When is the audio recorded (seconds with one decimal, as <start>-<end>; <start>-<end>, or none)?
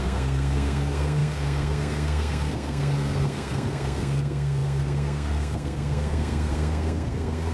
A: none